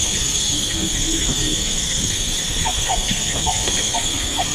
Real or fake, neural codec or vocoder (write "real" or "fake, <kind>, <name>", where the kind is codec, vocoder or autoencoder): fake, codec, SNAC